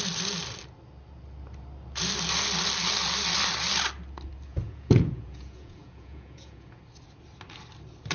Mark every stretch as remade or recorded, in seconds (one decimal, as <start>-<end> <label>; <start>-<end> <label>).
0.0-4.5 recorded; 4.5-6.8 remade; 6.8-8.1 recorded